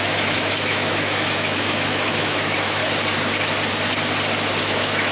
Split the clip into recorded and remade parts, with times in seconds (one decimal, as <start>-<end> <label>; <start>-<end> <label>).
0.0-2.8 remade; 2.8-4.6 recorded; 4.6-5.1 remade